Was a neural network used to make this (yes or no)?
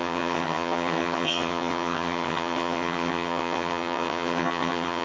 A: yes